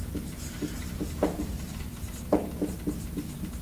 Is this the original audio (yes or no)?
no